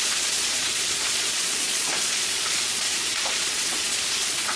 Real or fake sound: fake